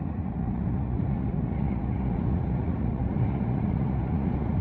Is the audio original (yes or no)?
no